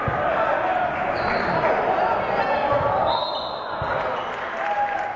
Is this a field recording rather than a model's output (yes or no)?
yes